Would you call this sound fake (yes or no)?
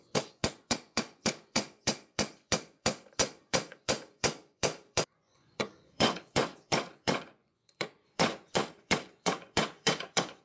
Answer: yes